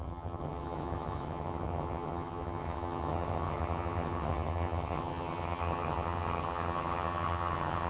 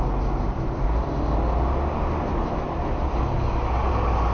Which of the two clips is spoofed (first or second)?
first